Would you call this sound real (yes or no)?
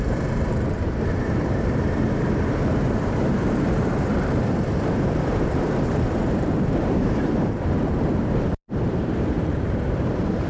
no